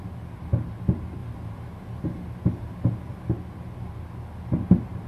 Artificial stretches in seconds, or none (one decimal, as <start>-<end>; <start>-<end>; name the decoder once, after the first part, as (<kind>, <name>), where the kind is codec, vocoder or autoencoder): none